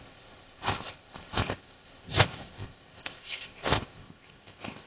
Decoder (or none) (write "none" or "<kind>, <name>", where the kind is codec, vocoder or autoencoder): codec, ZipCodec